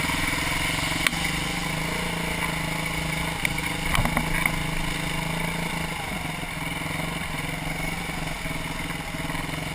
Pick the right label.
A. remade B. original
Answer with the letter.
B